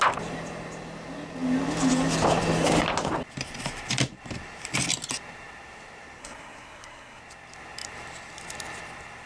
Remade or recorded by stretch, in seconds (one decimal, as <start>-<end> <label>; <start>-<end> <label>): 0.0-6.2 recorded; 6.2-7.2 remade; 7.2-9.3 recorded